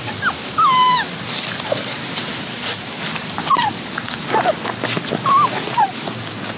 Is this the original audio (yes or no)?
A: yes